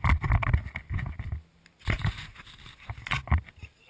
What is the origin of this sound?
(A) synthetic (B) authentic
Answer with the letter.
B